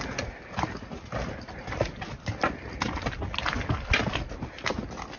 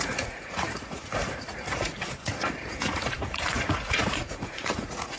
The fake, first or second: second